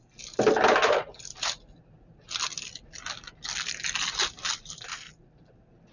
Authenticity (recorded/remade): recorded